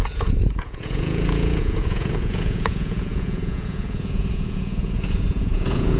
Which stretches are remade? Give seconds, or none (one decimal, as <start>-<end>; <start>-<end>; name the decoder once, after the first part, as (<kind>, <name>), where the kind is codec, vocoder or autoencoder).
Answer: 0.0-6.0 (vocoder, Vocos)